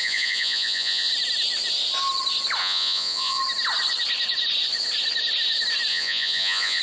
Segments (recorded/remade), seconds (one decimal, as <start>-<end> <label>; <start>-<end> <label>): 0.0-1.1 remade; 1.1-2.6 recorded; 2.6-3.4 remade; 3.4-5.9 recorded; 5.9-6.8 remade